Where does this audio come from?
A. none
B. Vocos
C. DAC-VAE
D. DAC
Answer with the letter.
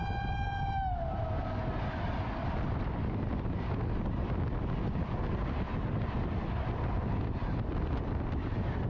A